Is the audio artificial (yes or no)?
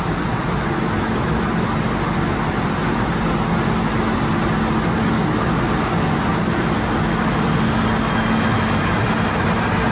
no